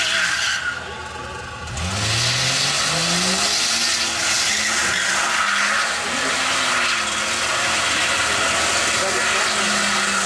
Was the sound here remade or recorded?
recorded